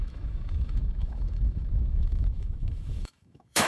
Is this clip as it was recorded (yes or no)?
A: no